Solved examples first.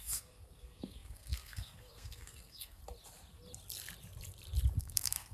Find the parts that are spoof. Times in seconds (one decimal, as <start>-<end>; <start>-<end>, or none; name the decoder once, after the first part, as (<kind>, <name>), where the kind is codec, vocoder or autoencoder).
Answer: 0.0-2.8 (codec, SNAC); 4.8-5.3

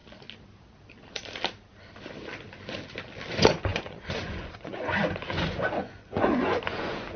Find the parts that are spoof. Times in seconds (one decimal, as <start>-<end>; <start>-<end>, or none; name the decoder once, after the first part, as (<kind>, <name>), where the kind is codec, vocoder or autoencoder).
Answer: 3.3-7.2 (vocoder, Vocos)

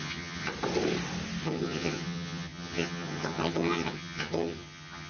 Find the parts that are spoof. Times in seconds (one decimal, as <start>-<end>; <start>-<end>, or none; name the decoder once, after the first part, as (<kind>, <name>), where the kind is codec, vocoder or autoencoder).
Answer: 0.0-0.5 (vocoder, HiFi-GAN); 1.4-5.1

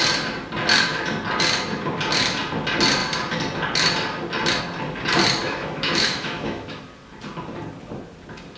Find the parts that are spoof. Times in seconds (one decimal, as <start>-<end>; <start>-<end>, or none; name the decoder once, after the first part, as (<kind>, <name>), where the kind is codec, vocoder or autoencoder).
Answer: 5.4-6.8 (autoencoder, DAC-VAE)